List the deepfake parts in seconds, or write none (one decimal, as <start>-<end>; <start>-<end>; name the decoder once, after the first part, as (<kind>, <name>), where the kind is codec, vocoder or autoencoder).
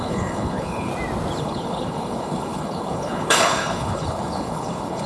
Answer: 0.0-0.9 (codec, HILCodec); 1.4-5.1